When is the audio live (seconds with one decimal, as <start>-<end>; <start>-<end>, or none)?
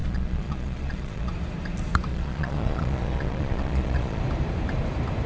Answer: 1.3-2.1; 4.2-5.3